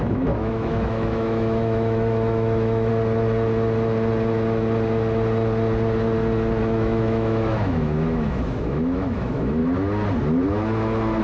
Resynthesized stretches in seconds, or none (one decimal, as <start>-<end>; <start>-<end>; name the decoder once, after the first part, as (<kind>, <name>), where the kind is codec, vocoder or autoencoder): 0.0-2.9 (autoencoder, DAC-VAE); 6.6-9.6